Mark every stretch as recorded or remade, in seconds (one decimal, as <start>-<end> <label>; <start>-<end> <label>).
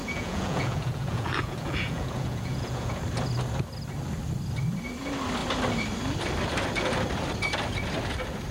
0.0-3.0 remade; 3.0-8.5 recorded